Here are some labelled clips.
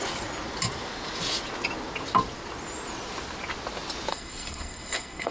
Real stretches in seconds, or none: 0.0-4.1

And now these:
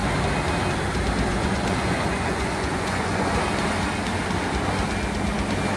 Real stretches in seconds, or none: 0.0-1.3; 3.3-5.8

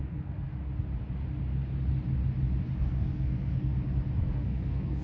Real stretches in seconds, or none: 0.5-2.8; 3.7-4.2